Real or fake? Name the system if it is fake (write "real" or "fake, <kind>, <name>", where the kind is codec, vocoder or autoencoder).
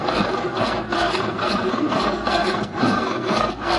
fake, codec, SNAC